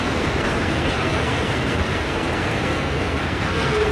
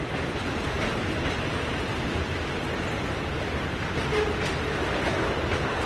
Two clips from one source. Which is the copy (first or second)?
first